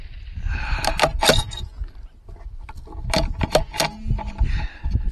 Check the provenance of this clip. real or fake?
real